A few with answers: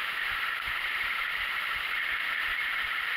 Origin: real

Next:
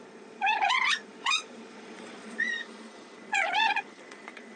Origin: fake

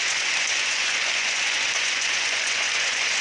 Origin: fake